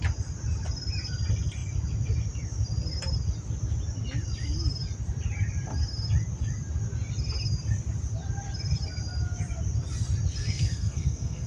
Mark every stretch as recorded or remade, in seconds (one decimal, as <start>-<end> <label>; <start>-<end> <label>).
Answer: 0.0-10.4 recorded; 10.4-11.5 remade